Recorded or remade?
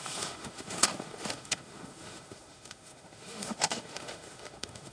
remade